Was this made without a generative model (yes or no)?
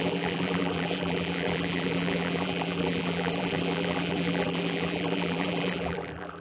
no